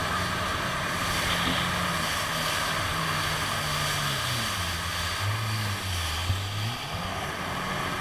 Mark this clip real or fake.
real